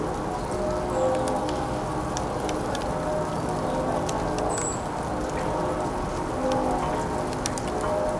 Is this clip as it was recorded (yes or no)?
yes